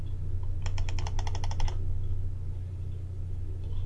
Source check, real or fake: real